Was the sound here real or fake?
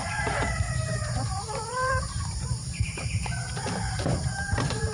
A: fake